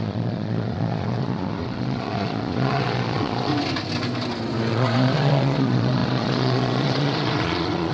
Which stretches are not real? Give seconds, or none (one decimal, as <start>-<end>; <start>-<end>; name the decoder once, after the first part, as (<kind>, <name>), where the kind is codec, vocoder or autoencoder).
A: 0.0-3.5 (vocoder, Vocos); 4.7-7.9